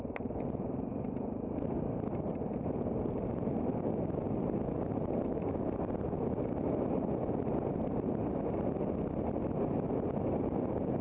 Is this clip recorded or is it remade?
recorded